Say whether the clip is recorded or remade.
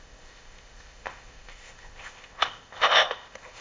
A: remade